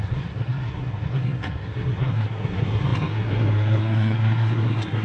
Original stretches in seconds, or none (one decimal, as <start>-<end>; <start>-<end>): none